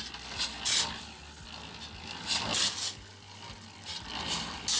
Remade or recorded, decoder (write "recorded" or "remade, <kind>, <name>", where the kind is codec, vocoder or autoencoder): recorded